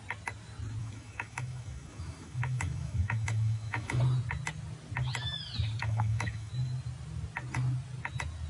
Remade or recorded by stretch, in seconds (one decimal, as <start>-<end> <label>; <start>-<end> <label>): 0.0-0.8 recorded; 0.8-4.0 remade; 4.0-5.8 recorded; 5.8-6.5 remade; 6.5-8.5 recorded